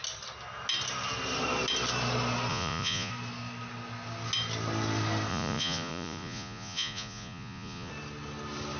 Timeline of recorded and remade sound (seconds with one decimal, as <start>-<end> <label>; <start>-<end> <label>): 0.0-2.5 recorded; 2.5-3.1 remade; 3.1-5.3 recorded; 5.3-7.9 remade; 7.9-8.8 recorded